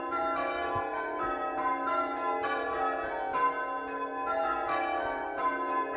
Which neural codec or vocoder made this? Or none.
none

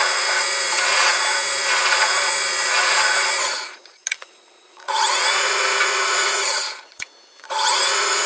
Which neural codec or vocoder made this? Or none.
vocoder, Vocos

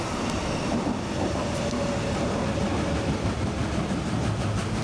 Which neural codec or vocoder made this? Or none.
none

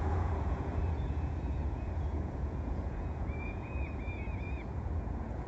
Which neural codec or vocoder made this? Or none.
vocoder, Vocos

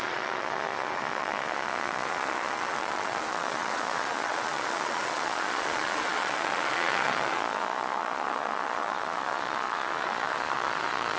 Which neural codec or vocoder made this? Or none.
vocoder, Vocos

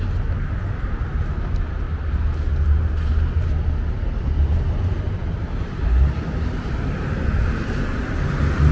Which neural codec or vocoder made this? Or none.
none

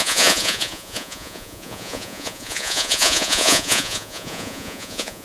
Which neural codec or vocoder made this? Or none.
vocoder, Vocos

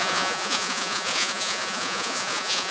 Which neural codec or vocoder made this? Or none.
vocoder, Vocos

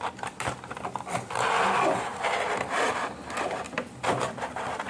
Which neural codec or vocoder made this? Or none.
none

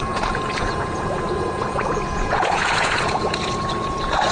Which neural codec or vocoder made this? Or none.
vocoder, Vocos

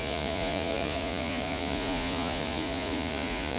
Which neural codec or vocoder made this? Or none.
vocoder, Vocos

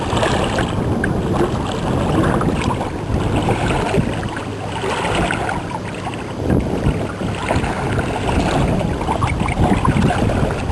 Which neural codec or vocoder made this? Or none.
none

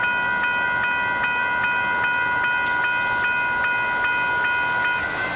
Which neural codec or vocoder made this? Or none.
none